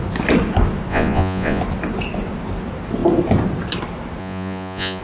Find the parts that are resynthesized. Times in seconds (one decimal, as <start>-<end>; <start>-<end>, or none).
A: 0.9-1.6; 4.2-5.0